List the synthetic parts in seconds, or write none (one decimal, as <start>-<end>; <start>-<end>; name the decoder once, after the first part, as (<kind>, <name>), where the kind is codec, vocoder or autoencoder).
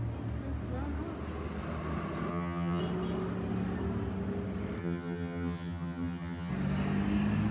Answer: 2.3-2.8 (vocoder, HiFi-GAN); 4.8-6.5